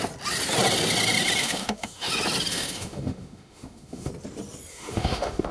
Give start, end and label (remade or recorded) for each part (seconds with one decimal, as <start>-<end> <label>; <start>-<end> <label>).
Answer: 0.0-1.4 recorded; 1.4-2.1 remade; 2.1-2.5 recorded; 2.5-4.1 remade; 4.1-4.7 recorded; 4.7-5.5 remade